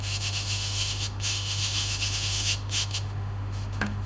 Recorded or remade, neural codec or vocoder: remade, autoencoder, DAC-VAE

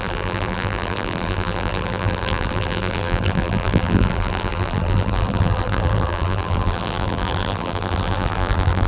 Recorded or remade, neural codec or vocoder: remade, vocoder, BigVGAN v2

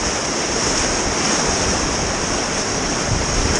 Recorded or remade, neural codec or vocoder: remade, vocoder, BigVGAN v2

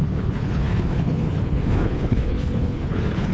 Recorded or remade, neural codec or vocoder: remade, codec, HILCodec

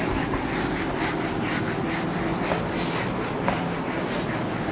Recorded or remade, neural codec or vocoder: recorded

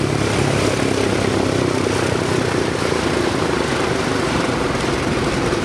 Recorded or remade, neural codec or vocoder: recorded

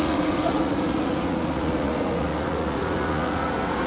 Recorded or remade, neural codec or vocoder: remade, vocoder, Vocos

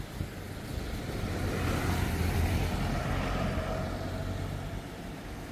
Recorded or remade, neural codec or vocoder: recorded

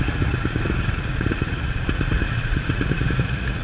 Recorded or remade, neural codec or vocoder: remade, vocoder, Vocos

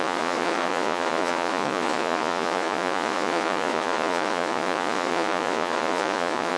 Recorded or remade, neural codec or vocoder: remade, vocoder, Vocos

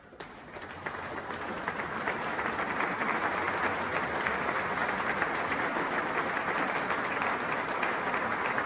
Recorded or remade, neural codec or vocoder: recorded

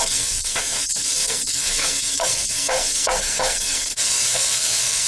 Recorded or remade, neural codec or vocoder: remade, codec, SNAC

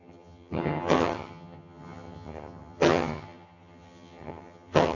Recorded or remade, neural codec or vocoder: remade, vocoder, HiFi-GAN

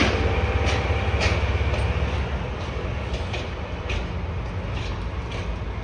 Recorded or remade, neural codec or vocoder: recorded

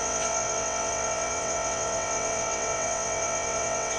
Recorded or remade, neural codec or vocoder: remade, vocoder, WaveNeXt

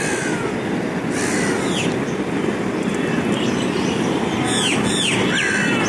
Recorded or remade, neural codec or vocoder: recorded